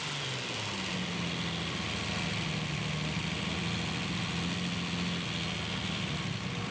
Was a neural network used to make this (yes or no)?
no